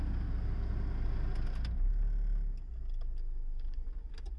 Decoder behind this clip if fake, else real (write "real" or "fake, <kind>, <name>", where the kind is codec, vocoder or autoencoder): real